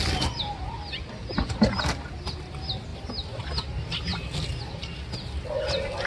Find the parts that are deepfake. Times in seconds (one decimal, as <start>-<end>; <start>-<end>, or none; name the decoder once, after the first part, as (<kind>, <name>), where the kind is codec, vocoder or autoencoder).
none

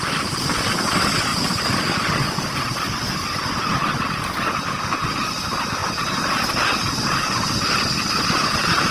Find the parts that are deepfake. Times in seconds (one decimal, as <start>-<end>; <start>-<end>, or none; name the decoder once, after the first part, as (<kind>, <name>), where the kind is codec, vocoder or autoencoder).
none

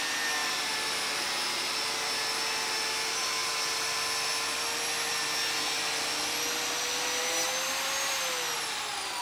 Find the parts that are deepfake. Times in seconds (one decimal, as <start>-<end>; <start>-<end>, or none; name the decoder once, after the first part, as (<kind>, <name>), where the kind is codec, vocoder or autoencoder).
none

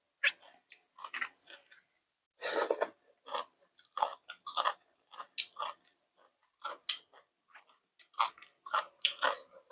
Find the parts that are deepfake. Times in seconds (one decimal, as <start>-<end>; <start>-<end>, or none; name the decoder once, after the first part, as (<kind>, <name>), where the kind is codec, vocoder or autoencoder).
none

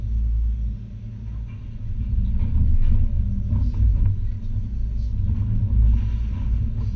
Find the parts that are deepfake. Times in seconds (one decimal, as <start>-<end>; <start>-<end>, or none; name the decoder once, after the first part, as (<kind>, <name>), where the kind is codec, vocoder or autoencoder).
none